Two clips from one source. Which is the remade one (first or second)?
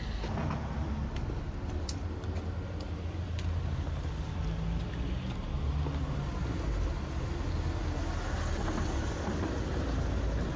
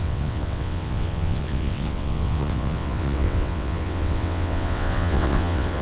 second